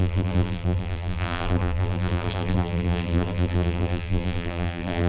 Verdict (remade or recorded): remade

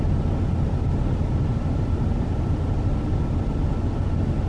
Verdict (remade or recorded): recorded